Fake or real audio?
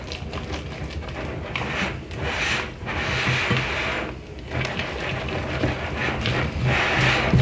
real